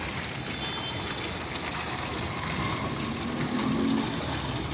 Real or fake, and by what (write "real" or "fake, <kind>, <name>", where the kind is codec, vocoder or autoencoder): real